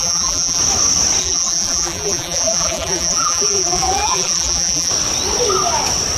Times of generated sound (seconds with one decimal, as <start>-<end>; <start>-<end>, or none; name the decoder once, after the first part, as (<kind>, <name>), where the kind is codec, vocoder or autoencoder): 0.0-0.6 (vocoder, BigVGAN v2); 1.2-4.9